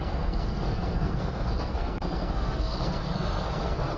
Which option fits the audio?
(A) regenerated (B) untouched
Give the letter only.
A